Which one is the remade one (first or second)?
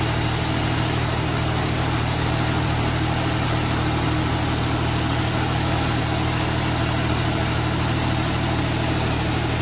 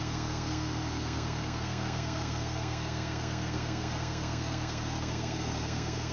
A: second